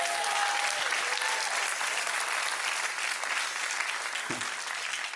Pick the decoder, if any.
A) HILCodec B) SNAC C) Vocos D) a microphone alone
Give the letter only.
D